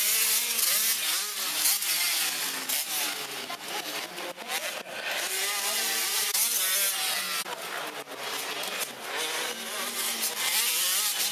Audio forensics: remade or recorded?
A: recorded